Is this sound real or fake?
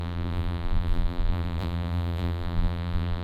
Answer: fake